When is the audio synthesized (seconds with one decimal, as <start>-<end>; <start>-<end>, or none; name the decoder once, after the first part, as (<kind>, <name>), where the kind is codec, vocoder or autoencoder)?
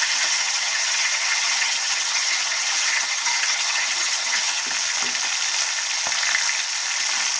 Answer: 0.0-4.6 (vocoder, HiFi-GAN)